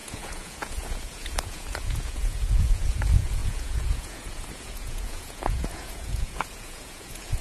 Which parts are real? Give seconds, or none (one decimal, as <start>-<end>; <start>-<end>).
none